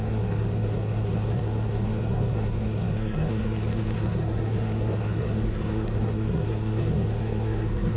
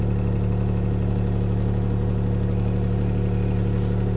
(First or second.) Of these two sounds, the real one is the second